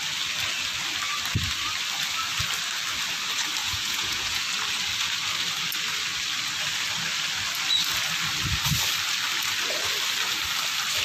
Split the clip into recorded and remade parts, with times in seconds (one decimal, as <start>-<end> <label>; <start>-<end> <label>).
0.0-3.6 recorded; 3.6-4.4 remade; 4.4-11.0 recorded